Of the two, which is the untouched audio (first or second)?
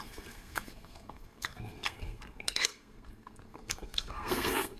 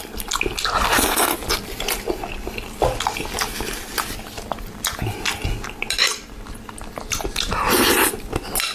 second